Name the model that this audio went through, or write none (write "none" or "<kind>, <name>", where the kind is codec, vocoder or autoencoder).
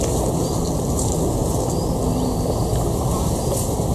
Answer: none